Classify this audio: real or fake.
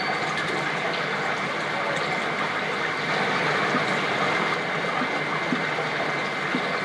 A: real